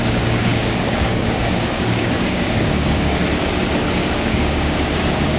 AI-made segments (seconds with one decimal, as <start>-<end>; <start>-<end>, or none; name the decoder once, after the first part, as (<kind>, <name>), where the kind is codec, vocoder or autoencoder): 0.0-3.2 (codec, DAC); 3.9-5.4